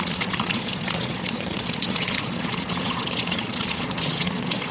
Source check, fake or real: fake